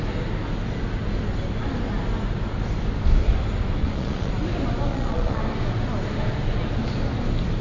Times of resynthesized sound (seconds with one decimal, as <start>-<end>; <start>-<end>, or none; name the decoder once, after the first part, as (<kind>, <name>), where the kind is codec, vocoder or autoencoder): 3.8-4.3 (vocoder, Vocos); 4.9-5.4